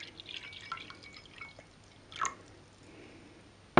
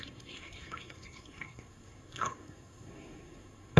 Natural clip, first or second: first